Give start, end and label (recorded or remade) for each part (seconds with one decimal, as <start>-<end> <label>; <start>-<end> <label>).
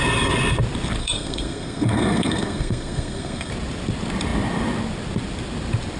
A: 0.0-1.0 recorded; 1.0-3.5 remade; 3.5-6.0 recorded